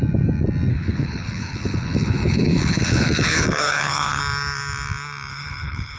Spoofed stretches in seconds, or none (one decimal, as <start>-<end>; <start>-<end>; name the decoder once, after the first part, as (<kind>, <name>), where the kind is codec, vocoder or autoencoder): 0.7-4.2 (codec, HILCodec); 5.3-6.0